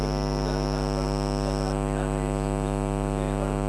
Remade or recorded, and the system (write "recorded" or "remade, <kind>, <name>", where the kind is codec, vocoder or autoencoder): recorded